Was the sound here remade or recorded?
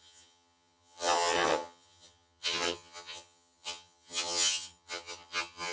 remade